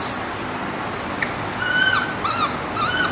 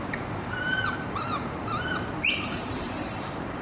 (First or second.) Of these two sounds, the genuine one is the first